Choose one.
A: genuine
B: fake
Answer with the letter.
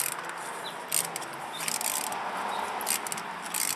A